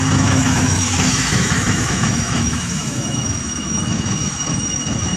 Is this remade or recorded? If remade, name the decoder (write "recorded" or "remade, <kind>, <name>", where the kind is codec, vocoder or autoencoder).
remade, autoencoder, DAC-VAE